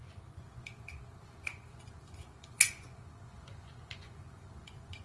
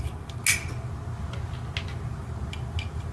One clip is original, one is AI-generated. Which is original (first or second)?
second